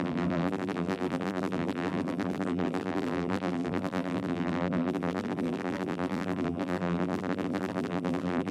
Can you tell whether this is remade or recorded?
remade